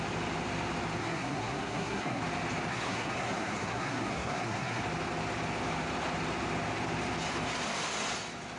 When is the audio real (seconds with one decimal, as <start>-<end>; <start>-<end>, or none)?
0.0-1.0; 2.2-2.7; 4.8-8.6

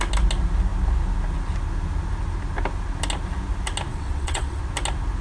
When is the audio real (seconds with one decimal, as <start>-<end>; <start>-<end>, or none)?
0.0-3.9; 4.6-5.2

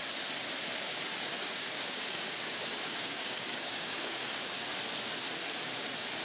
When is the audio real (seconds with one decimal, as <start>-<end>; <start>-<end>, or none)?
0.0-1.1; 4.4-6.2

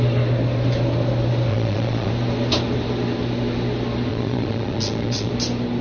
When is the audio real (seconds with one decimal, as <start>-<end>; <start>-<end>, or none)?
0.0-1.5; 2.1-4.1; 5.3-5.8

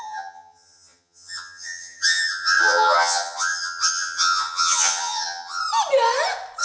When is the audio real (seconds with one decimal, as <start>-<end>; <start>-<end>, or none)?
5.6-6.6

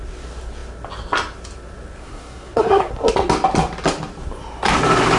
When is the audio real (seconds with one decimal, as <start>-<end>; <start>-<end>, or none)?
0.0-2.0; 2.9-5.2

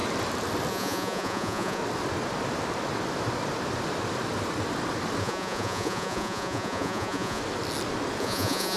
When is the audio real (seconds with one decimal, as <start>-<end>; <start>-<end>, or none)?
0.0-0.7; 1.8-5.2; 7.4-8.2

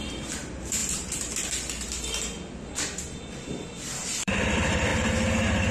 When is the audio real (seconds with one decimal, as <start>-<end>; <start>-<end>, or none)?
0.8-4.2; 4.9-5.7